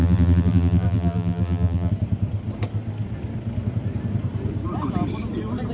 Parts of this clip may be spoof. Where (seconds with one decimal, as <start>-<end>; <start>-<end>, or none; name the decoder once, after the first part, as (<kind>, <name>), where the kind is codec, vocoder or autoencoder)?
0.0-1.9 (vocoder, BigVGAN v2)